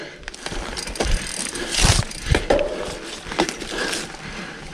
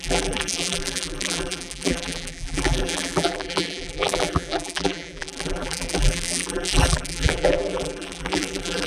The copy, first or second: second